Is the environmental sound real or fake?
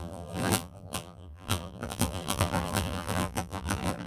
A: fake